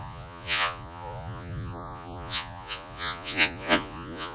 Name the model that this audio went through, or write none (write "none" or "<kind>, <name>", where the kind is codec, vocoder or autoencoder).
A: vocoder, Vocos